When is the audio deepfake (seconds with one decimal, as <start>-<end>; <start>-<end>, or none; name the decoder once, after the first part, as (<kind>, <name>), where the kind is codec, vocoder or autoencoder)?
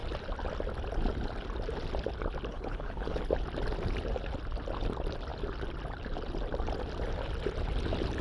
2.5-3.2 (codec, HILCodec)